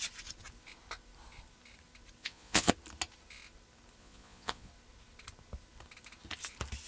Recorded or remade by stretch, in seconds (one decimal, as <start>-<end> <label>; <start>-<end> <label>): 0.0-2.2 recorded; 2.2-2.7 remade; 2.7-4.0 recorded; 4.0-4.7 remade; 4.7-6.9 recorded